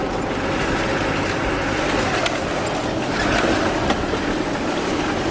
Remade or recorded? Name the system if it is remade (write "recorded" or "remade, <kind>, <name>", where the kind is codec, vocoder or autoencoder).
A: recorded